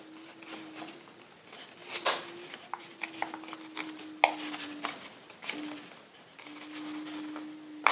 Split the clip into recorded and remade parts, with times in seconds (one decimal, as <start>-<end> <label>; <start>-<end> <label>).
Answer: 0.0-7.9 recorded